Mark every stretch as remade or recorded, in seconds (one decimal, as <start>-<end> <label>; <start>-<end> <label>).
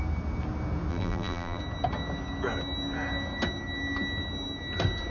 0.0-0.9 recorded; 0.9-1.6 remade; 1.6-5.1 recorded